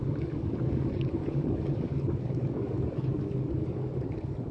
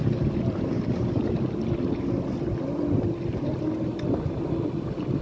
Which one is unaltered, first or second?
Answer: second